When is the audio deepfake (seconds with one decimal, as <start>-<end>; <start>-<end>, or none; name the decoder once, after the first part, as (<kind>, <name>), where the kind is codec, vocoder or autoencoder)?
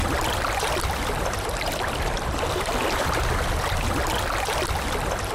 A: 0.0-3.2 (vocoder, BigVGAN v2)